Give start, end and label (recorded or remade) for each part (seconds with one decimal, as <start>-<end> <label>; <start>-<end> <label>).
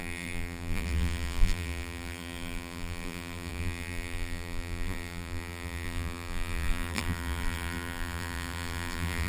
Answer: 0.0-9.3 remade